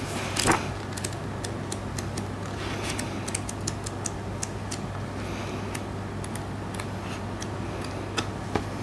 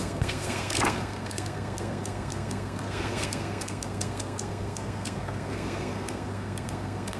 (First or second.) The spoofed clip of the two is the second